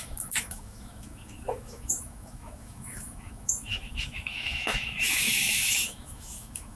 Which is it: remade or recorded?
remade